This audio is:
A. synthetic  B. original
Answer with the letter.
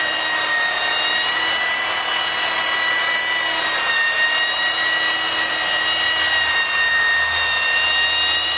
B